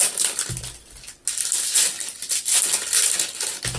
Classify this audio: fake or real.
real